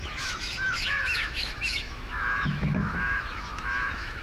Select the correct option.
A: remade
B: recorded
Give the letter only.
A